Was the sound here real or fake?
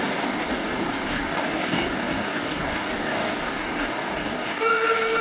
fake